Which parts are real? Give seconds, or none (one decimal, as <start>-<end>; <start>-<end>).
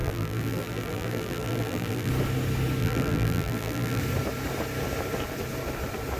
2.1-2.8; 4.0-6.2